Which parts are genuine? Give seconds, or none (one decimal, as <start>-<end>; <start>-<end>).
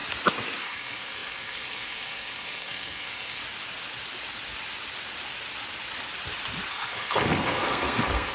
0.0-0.6; 3.4-6.7